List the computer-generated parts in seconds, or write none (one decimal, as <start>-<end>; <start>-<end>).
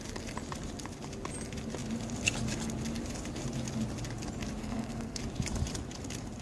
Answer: 4.6-5.2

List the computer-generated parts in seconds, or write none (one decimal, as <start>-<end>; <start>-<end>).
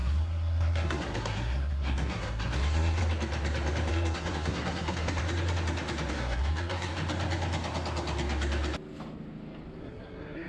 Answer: 0.0-3.0; 3.9-5.2; 6.1-6.9; 9.8-10.5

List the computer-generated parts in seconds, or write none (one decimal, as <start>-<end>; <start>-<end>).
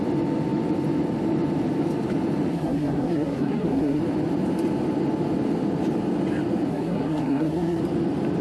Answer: 2.5-4.0; 6.7-7.8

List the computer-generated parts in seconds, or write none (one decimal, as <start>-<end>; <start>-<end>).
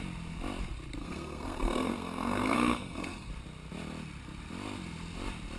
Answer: 1.0-3.3